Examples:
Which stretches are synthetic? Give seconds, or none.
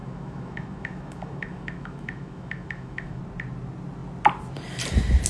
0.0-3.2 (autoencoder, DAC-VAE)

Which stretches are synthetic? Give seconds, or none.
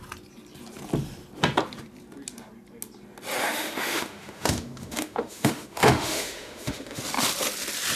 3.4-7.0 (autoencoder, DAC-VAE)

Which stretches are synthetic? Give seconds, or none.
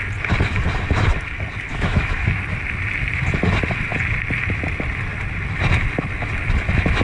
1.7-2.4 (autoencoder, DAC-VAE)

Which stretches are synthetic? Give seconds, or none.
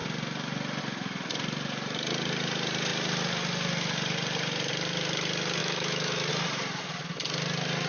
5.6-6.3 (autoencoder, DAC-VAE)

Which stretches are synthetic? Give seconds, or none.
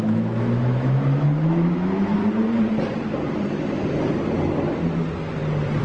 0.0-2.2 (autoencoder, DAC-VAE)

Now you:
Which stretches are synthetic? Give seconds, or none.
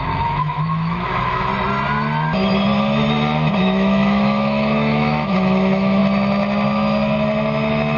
0.0-1.5 (autoencoder, DAC-VAE); 3.6-6.0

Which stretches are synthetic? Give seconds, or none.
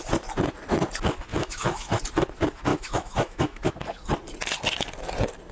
1.3-2.0 (autoencoder, DAC-VAE); 2.7-3.7